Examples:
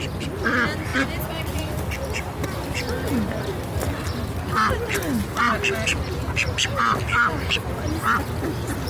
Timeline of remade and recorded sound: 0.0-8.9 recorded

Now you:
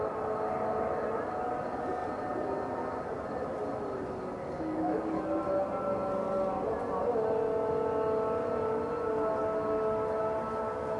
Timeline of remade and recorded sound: 0.0-4.4 recorded; 4.4-5.2 remade; 5.2-11.0 recorded

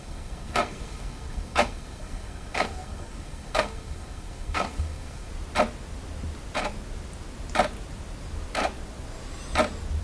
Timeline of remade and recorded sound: 0.0-5.3 remade; 5.3-10.0 recorded

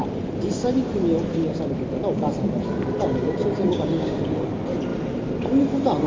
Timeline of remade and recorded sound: 0.0-3.4 recorded; 3.4-4.4 remade; 4.4-6.1 recorded

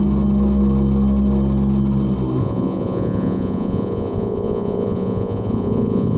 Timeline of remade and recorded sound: 0.0-2.4 recorded; 2.4-6.2 remade

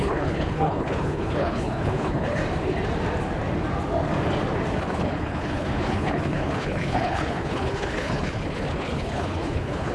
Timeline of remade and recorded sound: 0.0-2.4 remade; 2.4-4.8 recorded; 4.8-9.9 remade

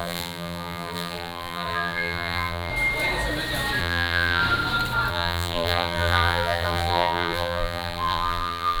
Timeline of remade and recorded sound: 0.0-2.7 remade; 2.7-3.8 recorded; 3.8-4.4 remade; 4.4-5.1 recorded; 5.1-8.8 remade